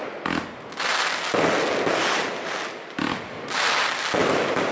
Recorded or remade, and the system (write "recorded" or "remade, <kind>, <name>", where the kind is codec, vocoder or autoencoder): recorded